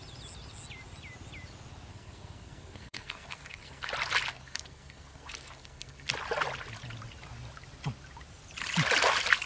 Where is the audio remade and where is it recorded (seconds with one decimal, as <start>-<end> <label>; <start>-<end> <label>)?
0.0-1.9 recorded; 1.9-3.9 remade; 3.9-4.3 recorded; 4.3-6.1 remade; 6.1-9.5 recorded